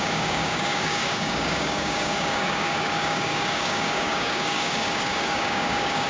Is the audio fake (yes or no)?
yes